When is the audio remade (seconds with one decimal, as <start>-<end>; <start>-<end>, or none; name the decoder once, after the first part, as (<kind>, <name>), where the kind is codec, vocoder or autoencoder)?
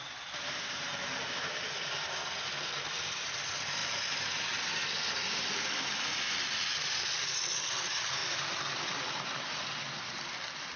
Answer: 8.2-8.8 (vocoder, BigVGAN v2)